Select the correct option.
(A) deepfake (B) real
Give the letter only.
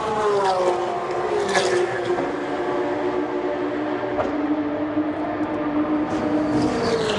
B